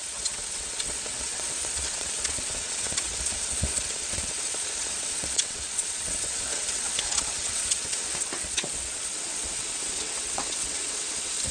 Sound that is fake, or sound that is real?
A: fake